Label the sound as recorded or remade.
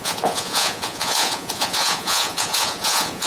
remade